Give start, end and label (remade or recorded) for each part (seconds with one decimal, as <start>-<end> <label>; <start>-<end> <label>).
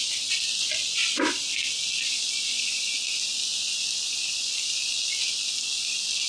0.0-6.3 recorded